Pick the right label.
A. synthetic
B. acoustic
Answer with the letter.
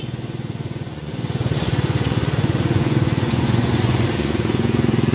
A